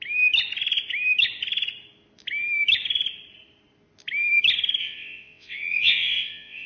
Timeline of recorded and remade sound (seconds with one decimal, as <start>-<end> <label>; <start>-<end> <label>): 0.0-4.8 recorded; 4.8-6.7 remade